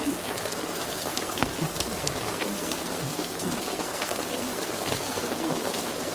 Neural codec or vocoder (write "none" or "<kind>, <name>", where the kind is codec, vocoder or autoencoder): codec, SNAC